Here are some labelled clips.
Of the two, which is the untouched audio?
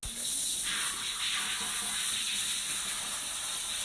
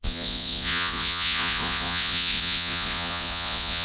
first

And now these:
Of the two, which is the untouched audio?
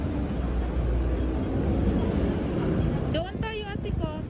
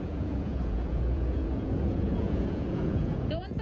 first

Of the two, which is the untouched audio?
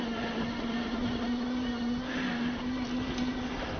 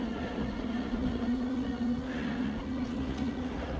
first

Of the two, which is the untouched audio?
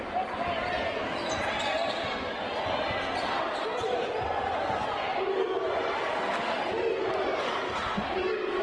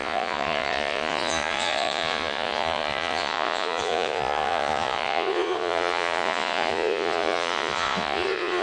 first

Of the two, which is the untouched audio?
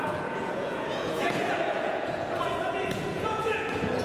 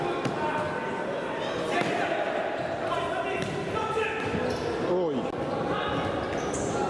second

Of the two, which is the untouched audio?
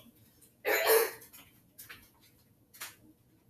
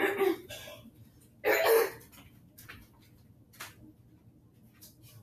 second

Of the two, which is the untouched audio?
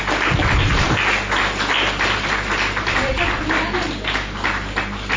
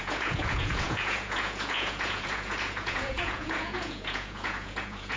first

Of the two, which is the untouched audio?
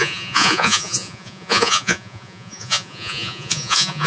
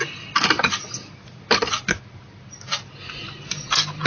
second